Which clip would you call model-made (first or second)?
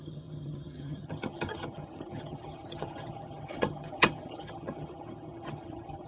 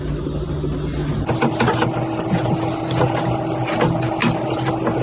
first